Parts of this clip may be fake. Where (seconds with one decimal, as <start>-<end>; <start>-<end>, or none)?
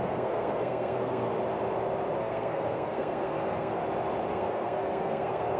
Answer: 0.0-1.3; 2.2-3.8; 4.3-5.6